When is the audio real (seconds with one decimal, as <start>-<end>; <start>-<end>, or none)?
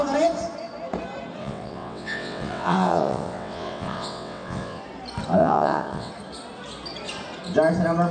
0.0-1.4; 4.8-5.4; 6.1-8.1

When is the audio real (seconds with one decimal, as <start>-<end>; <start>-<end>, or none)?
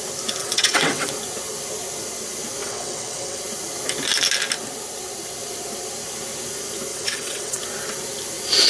0.0-0.4; 1.1-2.6; 3.4-6.9; 7.6-8.7